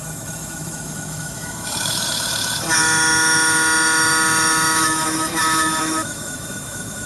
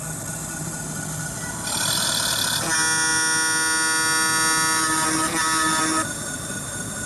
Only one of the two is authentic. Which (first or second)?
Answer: second